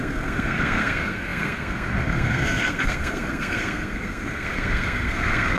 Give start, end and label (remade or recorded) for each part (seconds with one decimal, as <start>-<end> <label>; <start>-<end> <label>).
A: 0.0-5.6 remade